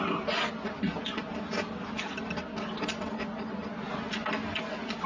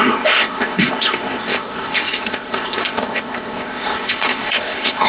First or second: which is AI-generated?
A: second